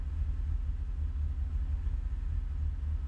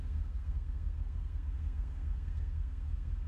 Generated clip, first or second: second